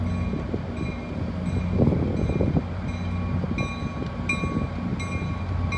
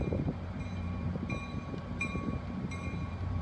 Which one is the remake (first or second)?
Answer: second